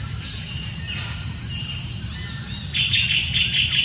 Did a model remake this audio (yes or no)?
no